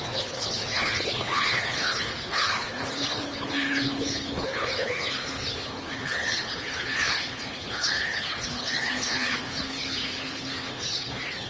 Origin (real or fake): fake